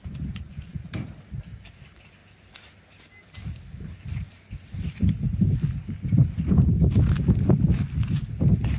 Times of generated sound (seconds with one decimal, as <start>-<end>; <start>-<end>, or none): 0.0-0.8

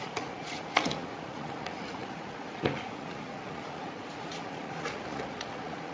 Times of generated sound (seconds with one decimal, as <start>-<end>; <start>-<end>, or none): 0.0-5.9